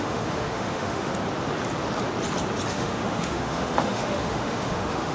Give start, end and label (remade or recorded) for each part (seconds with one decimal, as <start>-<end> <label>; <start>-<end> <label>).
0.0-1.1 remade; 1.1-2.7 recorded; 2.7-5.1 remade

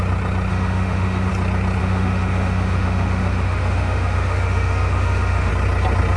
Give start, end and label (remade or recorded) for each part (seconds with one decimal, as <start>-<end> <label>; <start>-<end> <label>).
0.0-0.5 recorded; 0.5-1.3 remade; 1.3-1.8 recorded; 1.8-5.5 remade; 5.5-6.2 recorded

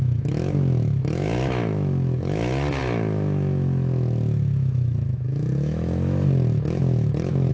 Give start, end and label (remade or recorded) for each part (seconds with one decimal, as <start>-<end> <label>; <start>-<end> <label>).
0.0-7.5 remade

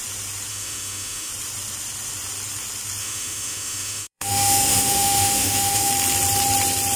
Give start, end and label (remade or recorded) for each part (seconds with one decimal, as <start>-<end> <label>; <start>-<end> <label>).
0.0-0.5 recorded; 0.5-1.3 remade; 1.3-3.0 recorded; 3.0-5.9 remade; 5.9-7.0 recorded